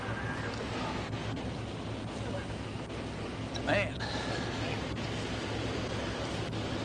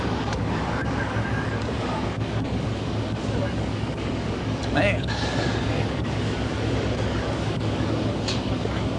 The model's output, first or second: second